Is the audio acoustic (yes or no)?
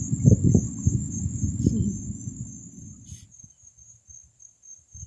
yes